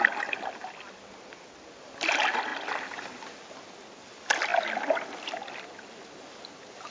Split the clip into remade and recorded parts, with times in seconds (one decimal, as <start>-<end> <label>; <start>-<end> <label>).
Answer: 0.0-4.5 recorded; 4.5-5.6 remade; 5.6-6.9 recorded